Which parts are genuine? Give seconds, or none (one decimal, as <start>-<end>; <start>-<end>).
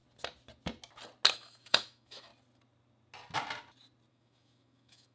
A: 0.0-1.3; 2.3-4.1